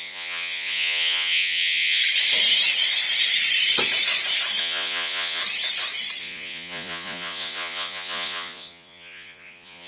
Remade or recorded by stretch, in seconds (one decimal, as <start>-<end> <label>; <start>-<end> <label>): 0.0-2.0 remade; 2.0-4.6 recorded; 4.6-5.4 remade; 5.4-6.2 recorded; 6.2-9.9 remade